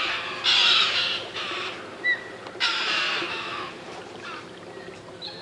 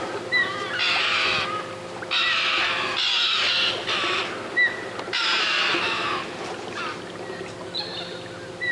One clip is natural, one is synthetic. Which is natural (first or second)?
second